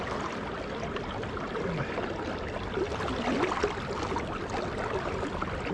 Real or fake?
real